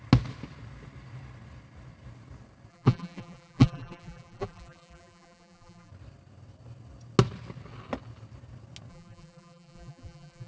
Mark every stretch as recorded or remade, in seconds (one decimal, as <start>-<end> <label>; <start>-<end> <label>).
0.0-2.7 recorded; 2.7-5.9 remade; 5.9-8.9 recorded; 8.9-10.5 remade